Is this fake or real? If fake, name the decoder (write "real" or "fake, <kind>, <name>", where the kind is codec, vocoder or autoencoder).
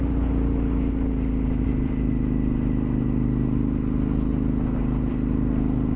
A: real